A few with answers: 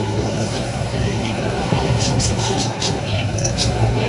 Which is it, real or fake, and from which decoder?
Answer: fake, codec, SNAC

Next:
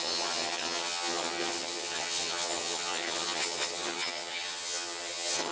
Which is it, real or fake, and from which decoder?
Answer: fake, vocoder, HiFi-GAN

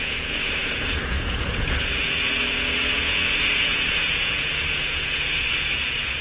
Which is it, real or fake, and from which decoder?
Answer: fake, vocoder, Vocos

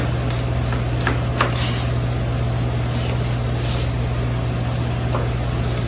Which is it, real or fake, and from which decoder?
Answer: real